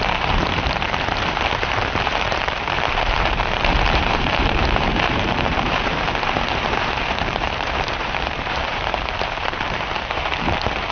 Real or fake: fake